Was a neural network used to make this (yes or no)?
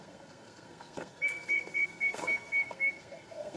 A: yes